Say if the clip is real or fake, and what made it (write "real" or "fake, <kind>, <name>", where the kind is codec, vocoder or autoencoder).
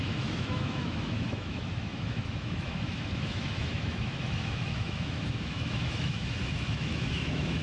fake, autoencoder, DAC-VAE